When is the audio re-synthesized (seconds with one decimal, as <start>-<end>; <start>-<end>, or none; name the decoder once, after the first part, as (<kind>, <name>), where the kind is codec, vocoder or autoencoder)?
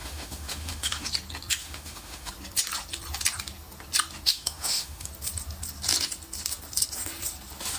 0.0-1.1 (autoencoder, DAC-VAE); 1.6-2.3; 4.3-5.1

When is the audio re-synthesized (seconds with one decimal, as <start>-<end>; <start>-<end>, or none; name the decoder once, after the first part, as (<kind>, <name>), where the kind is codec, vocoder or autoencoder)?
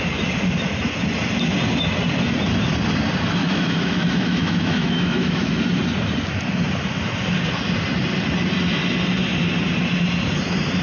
3.4-5.6 (autoencoder, DAC-VAE)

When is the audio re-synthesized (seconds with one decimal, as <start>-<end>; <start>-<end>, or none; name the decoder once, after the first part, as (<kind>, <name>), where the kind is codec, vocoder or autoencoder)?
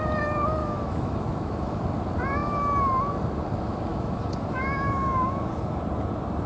0.6-1.8 (autoencoder, DAC-VAE); 3.9-5.5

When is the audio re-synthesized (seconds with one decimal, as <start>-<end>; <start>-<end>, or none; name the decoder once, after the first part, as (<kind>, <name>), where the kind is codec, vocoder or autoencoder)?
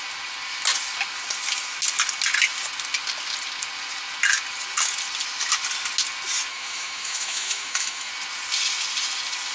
6.5-8.1 (autoencoder, DAC-VAE)